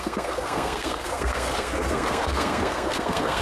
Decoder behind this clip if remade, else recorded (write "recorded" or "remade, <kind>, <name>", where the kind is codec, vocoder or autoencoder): remade, codec, SNAC